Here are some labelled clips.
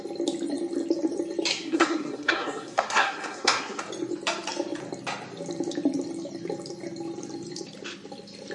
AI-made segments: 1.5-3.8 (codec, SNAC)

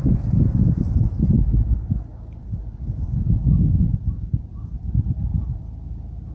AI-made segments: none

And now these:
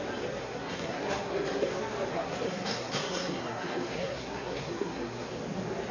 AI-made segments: 0.4-1.7 (codec, SNAC); 2.1-5.3

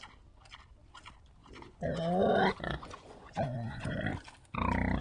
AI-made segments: 1.4-4.0 (vocoder, Vocos)

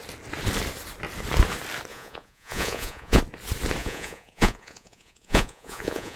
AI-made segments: 1.9-3.2 (vocoder, Vocos); 3.8-6.2

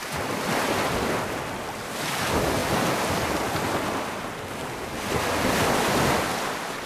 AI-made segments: none

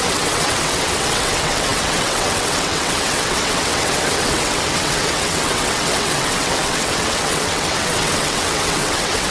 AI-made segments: 0.0-9.3 (vocoder, WaveNeXt)

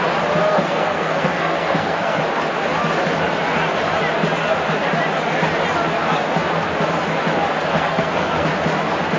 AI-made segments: 0.4-2.2 (codec, SNAC); 7.7-8.5